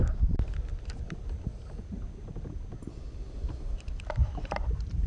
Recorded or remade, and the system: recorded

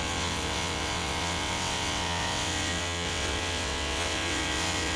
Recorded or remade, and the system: remade, vocoder, WaveNeXt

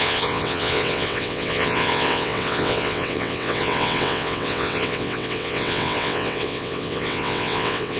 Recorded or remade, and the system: remade, vocoder, WaveNeXt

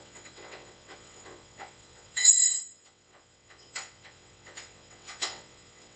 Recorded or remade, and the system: remade, vocoder, WaveNeXt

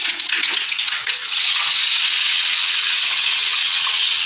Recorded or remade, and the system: remade, vocoder, WaveNeXt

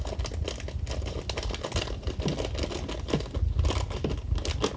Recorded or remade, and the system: recorded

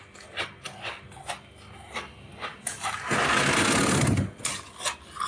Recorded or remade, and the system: recorded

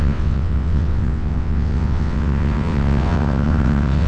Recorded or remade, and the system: remade, vocoder, WaveNeXt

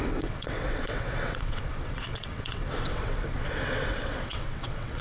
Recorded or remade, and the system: remade, vocoder, WaveNeXt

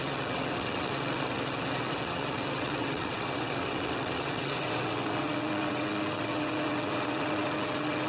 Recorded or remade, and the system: remade, vocoder, WaveNeXt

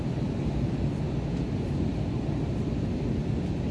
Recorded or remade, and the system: recorded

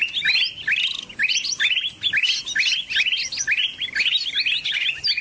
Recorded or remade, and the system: recorded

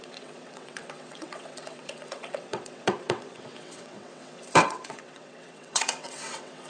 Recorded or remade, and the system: remade, vocoder, WaveNeXt